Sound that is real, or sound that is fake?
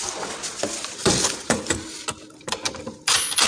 real